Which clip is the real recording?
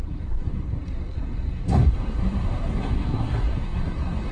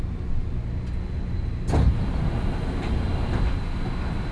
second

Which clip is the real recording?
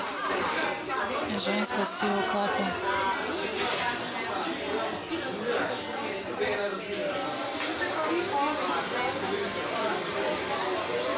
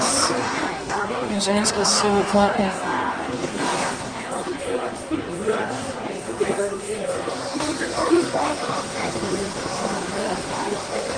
first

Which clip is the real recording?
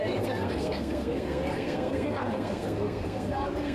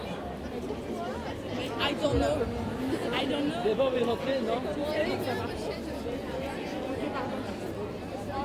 second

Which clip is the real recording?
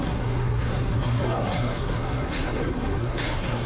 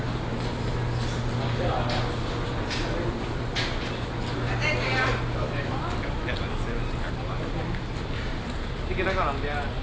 second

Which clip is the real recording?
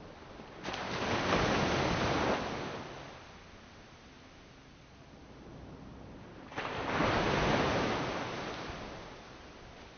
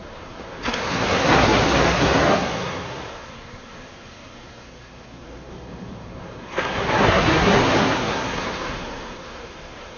first